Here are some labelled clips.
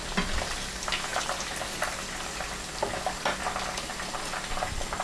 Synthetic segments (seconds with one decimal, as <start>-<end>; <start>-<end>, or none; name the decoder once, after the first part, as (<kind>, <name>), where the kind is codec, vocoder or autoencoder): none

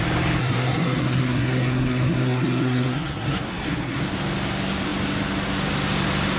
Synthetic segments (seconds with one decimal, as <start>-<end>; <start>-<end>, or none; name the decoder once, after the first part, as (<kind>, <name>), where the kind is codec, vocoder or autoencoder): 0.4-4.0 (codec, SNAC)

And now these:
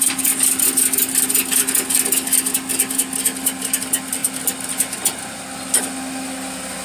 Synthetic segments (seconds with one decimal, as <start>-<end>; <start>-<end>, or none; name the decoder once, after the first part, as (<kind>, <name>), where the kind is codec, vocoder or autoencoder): none

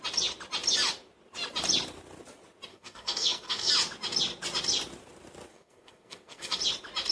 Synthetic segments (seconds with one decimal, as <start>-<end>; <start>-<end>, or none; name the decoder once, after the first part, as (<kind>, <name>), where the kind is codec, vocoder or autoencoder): 2.7-3.7 (codec, SNAC); 5.5-6.6